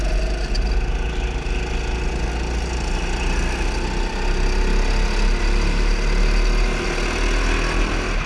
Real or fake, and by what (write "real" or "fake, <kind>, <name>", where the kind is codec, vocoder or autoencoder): real